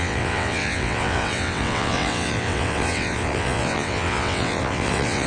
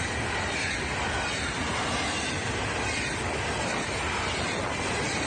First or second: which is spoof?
first